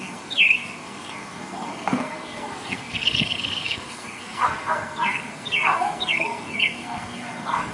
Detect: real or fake fake